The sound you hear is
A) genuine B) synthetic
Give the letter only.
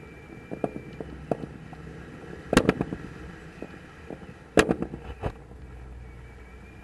A